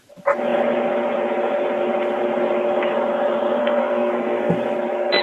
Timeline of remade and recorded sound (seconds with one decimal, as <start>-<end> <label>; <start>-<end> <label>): 0.0-3.6 recorded; 3.6-4.5 remade; 4.5-5.2 recorded